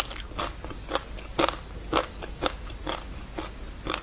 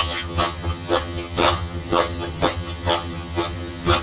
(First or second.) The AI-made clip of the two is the second